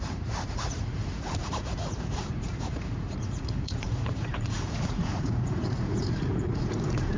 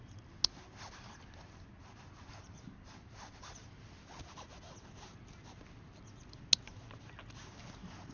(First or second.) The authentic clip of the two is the second